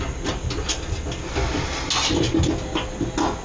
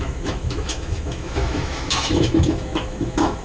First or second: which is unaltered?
first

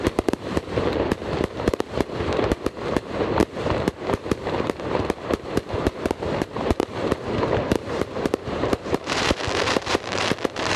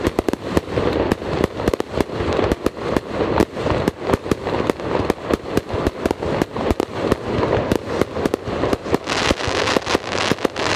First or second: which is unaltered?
second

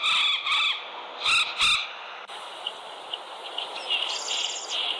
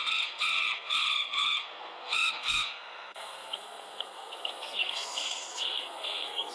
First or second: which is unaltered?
first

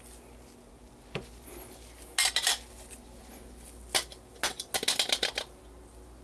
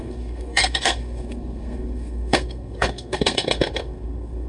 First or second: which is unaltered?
first